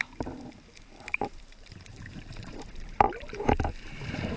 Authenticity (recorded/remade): remade